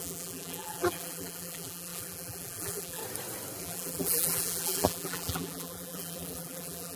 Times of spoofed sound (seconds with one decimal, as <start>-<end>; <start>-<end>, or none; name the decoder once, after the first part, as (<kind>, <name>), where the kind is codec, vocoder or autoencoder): 0.0-3.0 (vocoder, BigVGAN v2); 3.6-7.0